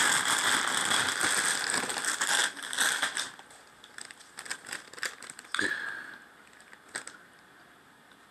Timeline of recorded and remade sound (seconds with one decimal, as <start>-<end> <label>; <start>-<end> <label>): 0.0-8.3 recorded